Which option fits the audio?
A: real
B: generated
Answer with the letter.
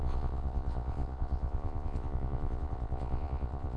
B